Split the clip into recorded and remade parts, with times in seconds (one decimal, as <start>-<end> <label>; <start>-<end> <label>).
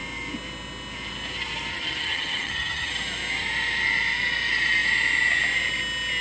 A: 0.0-1.7 recorded; 1.7-2.9 remade; 2.9-6.2 recorded